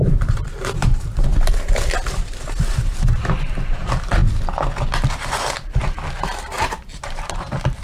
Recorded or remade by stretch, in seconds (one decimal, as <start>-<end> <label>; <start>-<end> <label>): 0.0-1.3 remade; 1.3-2.1 recorded; 2.1-4.2 remade; 4.2-5.1 recorded; 5.1-7.8 remade